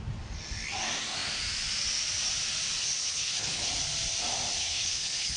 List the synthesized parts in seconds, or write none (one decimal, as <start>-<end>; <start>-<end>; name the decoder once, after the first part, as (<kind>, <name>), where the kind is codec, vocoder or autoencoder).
3.0-3.7 (codec, HILCodec); 4.6-5.4